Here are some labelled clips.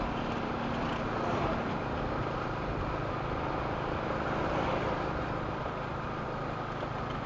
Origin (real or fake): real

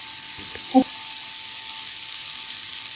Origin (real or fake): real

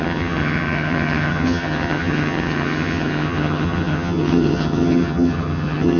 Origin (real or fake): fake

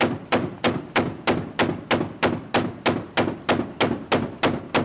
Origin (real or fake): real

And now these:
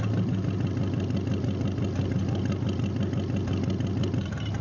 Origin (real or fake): real